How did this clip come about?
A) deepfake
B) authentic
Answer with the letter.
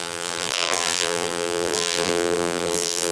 A